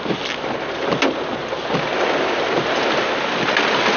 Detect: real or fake real